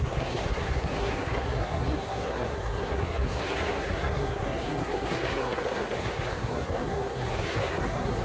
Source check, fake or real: fake